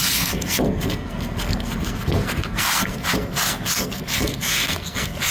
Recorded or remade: remade